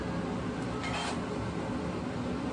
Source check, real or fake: real